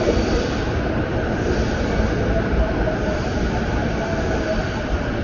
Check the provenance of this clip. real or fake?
real